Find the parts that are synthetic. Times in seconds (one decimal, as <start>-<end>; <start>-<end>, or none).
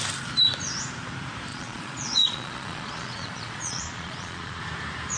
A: 1.5-4.6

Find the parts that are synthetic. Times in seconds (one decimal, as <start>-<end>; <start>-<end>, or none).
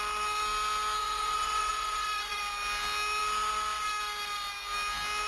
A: 1.0-2.4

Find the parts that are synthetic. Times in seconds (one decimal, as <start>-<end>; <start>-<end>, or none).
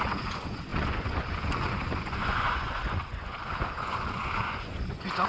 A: 0.0-5.3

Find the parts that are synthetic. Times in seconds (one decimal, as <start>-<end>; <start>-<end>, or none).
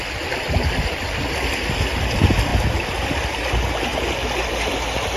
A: none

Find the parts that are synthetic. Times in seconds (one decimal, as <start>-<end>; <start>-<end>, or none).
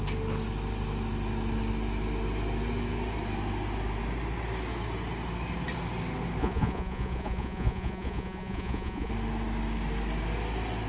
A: 6.4-9.1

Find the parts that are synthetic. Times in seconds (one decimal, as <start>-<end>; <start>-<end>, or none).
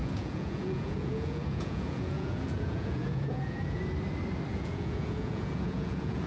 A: 0.0-3.8; 4.5-6.3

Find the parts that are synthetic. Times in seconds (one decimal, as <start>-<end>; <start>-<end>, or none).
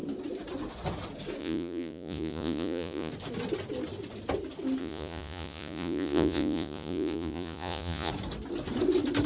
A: 1.4-3.1; 4.8-8.1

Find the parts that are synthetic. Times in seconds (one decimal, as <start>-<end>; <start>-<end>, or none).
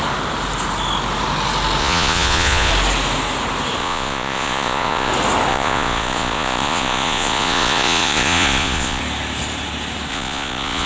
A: 1.8-2.7; 3.8-5.1; 5.5-9.0; 10.1-10.9